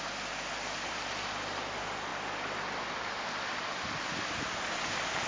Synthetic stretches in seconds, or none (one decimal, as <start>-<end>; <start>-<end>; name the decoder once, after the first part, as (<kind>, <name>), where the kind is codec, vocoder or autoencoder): none